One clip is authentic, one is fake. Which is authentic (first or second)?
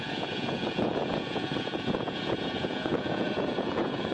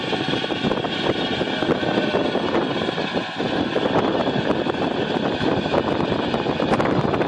second